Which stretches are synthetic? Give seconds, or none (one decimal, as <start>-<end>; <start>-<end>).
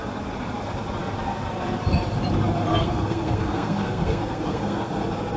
2.7-4.9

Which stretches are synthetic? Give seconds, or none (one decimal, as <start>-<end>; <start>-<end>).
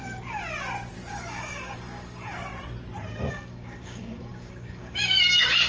1.1-2.5; 3.3-5.7